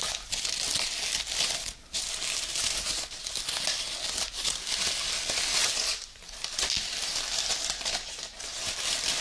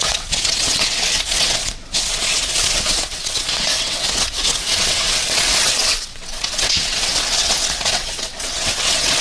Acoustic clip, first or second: first